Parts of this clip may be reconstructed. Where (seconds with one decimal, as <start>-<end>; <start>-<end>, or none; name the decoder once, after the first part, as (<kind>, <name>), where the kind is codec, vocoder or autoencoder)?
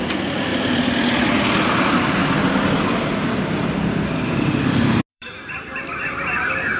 5.1-5.8 (vocoder, BigVGAN v2)